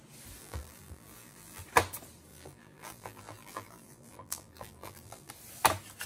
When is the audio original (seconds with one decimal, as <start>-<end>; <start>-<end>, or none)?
0.0-0.4; 1.6-2.3; 5.3-6.1